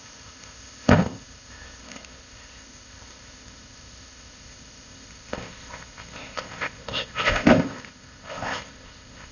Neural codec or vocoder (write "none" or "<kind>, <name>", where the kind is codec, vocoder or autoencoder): codec, ZipCodec